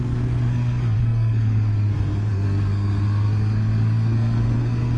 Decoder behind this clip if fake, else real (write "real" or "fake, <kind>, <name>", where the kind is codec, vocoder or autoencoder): fake, codec, SNAC